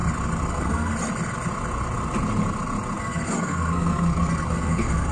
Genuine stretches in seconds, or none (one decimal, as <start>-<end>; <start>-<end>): 0.0-0.5; 0.9-3.0